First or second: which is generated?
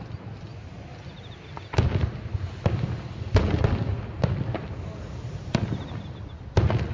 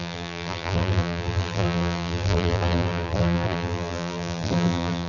second